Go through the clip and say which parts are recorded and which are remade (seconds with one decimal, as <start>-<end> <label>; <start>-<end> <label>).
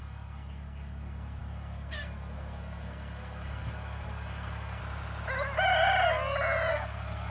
0.0-4.8 remade; 4.8-6.7 recorded; 6.7-7.3 remade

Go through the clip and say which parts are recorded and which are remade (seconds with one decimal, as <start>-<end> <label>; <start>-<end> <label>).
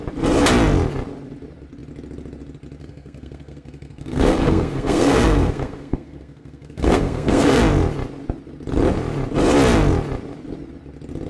0.0-2.8 recorded; 2.8-7.6 remade; 7.6-11.3 recorded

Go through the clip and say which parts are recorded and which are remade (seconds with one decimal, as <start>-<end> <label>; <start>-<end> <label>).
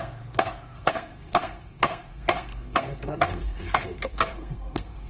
0.0-5.1 remade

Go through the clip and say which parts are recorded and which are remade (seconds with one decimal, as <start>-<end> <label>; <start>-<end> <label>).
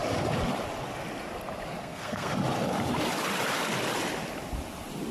0.0-1.8 recorded; 1.8-2.3 remade; 2.3-5.1 recorded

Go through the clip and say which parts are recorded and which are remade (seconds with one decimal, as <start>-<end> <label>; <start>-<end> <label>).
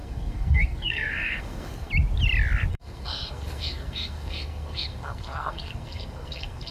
0.0-1.9 remade; 1.9-2.7 recorded; 2.7-6.7 remade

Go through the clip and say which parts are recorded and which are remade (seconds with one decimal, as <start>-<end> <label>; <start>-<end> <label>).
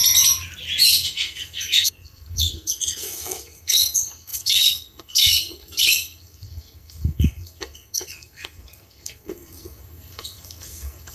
0.0-0.9 recorded; 0.9-11.1 remade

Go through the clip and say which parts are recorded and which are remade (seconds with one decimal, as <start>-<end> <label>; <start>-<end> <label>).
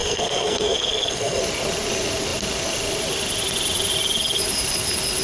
0.0-1.4 remade; 1.4-5.2 recorded